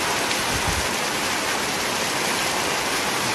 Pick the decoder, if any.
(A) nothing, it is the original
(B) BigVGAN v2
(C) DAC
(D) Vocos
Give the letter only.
A